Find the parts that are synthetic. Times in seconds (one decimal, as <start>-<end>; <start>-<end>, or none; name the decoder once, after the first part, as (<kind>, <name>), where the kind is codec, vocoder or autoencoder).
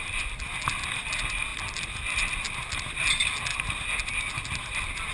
none